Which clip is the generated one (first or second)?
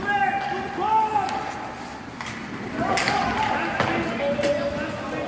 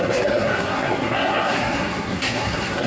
second